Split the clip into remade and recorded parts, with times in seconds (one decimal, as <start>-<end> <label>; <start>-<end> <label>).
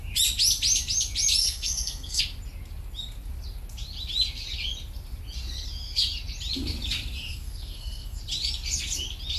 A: 0.0-1.4 recorded; 1.4-2.2 remade; 2.2-7.3 recorded; 7.3-8.2 remade; 8.2-9.4 recorded